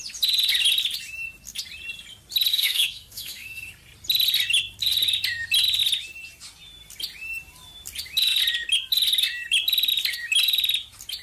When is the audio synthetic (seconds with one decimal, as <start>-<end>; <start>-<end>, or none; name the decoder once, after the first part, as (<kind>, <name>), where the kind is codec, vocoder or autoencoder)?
2.5-3.7 (autoencoder, DAC-VAE)